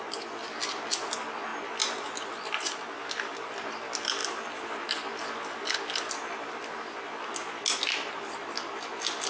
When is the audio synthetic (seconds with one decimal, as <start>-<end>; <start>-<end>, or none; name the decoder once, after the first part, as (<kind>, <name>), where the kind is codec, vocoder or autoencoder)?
none